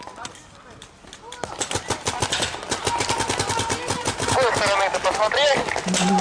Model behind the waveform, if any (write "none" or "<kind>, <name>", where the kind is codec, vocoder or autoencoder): none